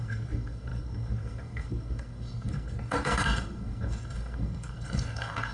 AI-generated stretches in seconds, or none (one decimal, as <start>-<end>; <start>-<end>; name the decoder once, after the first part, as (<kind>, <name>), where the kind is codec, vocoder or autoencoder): 0.0-5.5 (codec, SNAC)